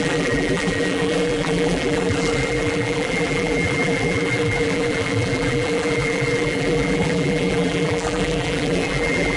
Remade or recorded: remade